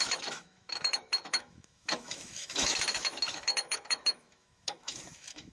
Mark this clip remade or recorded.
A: remade